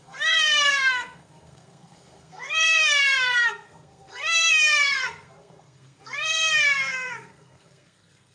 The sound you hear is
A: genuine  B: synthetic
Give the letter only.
B